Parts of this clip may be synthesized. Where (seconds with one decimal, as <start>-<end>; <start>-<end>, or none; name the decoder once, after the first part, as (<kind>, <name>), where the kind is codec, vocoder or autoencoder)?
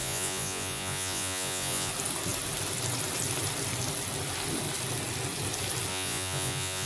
0.0-1.9 (vocoder, Vocos); 5.9-6.9